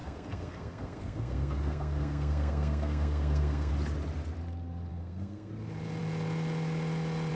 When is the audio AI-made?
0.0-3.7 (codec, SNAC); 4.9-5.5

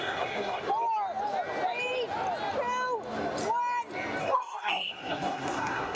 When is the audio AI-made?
0.0-0.6 (codec, SNAC); 4.2-6.0

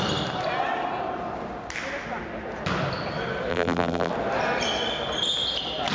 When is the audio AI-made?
3.5-4.1 (vocoder, BigVGAN v2)

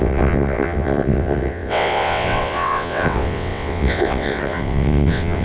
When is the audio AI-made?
0.0-5.4 (vocoder, WaveNeXt)

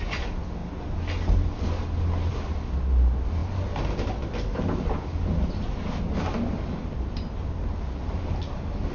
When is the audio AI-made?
none